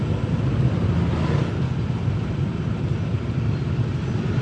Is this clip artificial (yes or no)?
no